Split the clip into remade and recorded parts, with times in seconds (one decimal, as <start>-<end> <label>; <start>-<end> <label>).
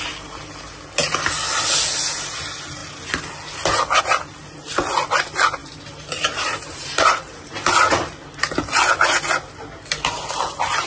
0.0-5.6 recorded; 5.6-7.5 remade; 7.5-10.9 recorded